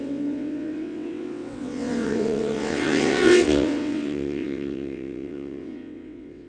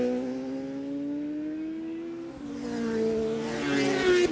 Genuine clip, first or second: second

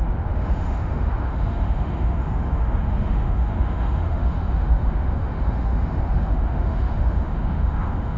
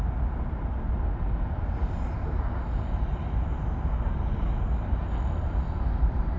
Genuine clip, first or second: second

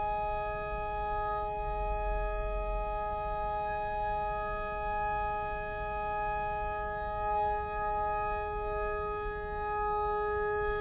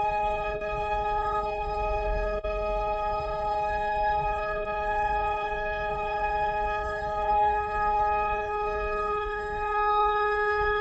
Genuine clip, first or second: first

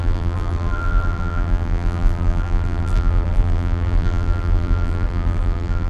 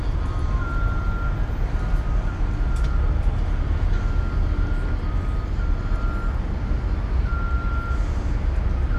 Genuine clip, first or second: second